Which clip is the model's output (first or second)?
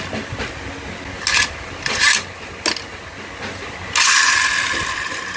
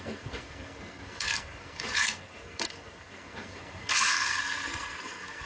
second